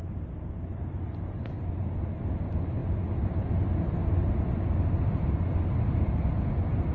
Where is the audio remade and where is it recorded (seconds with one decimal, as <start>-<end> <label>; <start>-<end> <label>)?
0.0-6.9 recorded